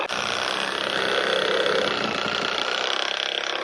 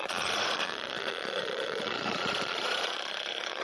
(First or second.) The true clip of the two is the first